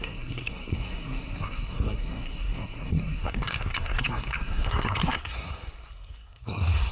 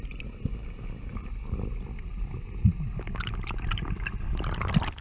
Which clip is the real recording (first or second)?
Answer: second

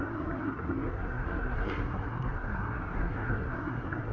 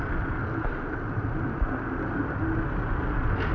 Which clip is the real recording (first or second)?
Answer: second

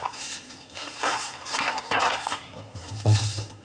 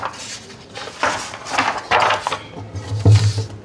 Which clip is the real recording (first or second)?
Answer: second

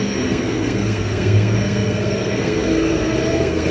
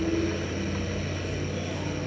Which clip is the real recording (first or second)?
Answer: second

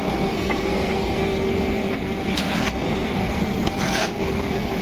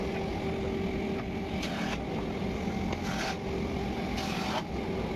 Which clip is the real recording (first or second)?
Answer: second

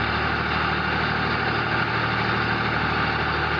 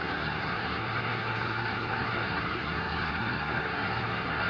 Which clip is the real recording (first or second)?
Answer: first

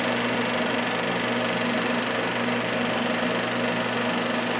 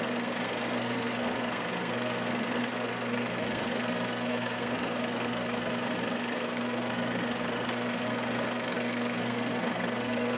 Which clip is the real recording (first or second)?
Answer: first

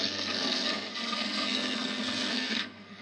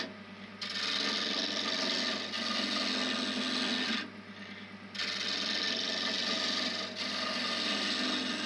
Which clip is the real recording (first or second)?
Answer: second